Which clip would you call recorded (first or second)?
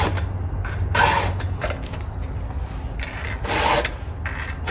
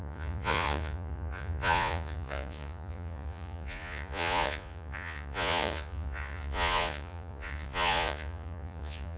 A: first